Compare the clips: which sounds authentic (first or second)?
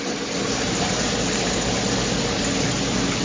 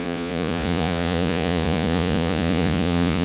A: first